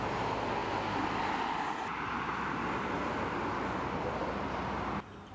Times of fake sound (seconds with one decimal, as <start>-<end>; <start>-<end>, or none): none